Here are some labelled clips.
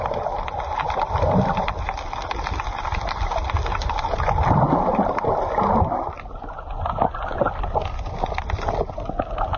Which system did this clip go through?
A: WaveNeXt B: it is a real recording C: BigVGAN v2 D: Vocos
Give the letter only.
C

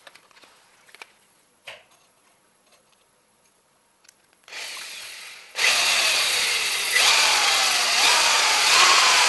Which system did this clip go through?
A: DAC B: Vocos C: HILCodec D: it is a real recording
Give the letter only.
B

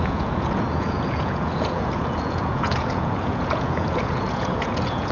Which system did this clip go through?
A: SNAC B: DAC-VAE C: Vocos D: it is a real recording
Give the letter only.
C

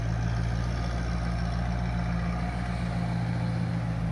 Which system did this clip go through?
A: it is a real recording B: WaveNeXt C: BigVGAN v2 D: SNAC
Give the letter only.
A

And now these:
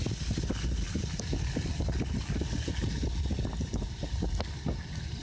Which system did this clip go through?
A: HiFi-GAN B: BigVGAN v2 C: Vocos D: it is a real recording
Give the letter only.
D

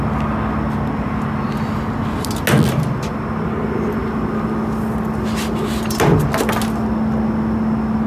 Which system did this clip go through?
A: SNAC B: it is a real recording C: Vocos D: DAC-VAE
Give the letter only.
B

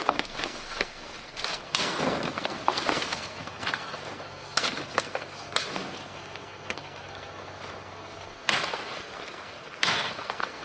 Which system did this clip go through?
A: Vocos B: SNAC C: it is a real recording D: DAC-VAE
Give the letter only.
B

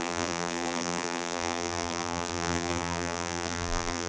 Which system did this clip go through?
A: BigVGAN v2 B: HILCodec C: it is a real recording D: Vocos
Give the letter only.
A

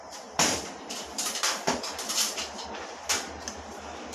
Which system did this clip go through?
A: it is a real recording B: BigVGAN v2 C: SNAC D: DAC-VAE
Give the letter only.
B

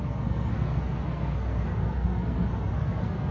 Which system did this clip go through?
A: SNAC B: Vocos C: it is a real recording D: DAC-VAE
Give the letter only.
A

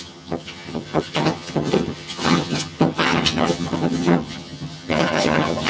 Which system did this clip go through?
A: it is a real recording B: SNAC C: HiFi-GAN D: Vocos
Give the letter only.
C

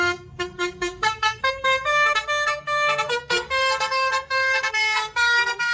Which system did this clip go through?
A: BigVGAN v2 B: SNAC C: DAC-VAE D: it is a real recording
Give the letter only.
B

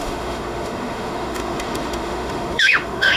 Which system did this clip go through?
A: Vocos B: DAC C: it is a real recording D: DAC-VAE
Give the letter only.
D